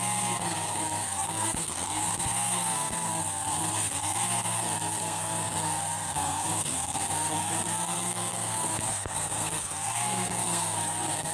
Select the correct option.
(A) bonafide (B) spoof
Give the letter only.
B